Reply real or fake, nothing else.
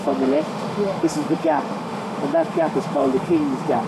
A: fake